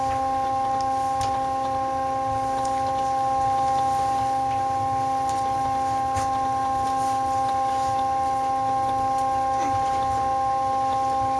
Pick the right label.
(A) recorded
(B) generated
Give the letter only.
A